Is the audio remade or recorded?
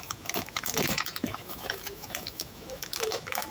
remade